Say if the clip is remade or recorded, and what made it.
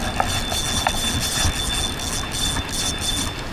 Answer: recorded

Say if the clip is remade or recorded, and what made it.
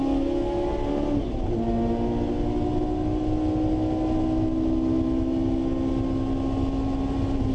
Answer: recorded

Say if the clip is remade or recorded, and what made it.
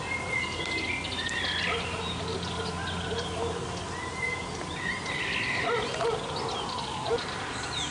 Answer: recorded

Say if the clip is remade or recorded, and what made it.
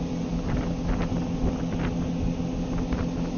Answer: recorded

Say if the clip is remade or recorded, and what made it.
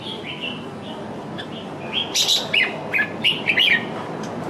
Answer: recorded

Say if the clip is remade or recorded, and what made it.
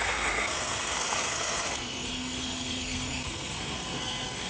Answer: remade, codec, SNAC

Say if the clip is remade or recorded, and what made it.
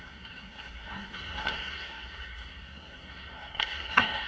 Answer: remade, codec, SNAC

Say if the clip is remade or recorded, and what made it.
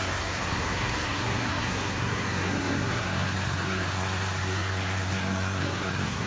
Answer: remade, codec, SNAC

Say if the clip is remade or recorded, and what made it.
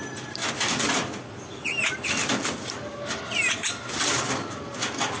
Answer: recorded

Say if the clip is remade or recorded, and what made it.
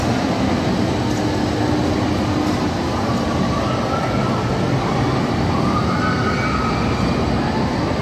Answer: recorded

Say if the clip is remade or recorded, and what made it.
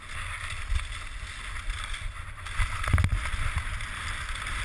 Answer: recorded